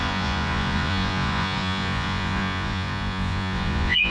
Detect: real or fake fake